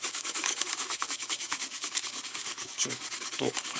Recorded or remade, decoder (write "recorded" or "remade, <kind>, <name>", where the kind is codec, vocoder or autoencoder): remade, codec, DAC